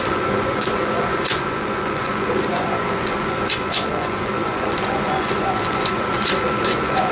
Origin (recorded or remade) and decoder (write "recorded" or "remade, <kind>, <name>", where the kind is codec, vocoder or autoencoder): remade, vocoder, Vocos